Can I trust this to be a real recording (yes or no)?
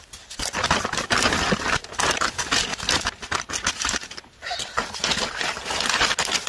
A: yes